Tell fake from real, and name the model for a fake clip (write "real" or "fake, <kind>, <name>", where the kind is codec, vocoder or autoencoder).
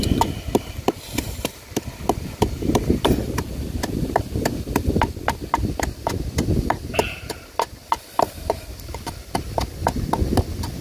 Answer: real